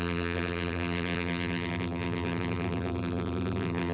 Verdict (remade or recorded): remade